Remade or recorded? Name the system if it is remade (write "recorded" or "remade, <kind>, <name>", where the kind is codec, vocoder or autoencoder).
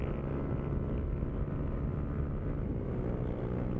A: recorded